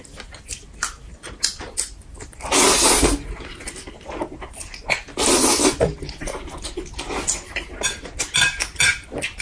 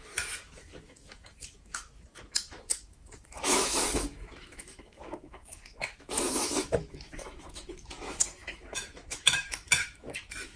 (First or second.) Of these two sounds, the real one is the first